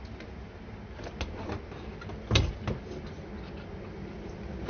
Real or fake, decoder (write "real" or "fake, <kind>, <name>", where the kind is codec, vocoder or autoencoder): real